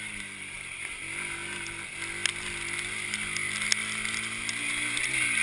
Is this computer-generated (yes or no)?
no